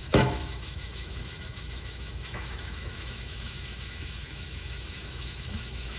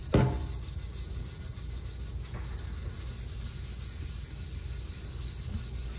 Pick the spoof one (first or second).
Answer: first